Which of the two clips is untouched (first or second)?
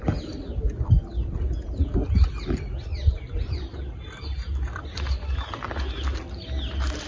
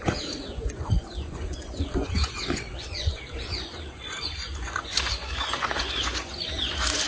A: first